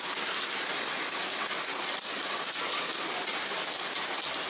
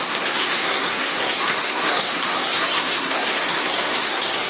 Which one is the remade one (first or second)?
second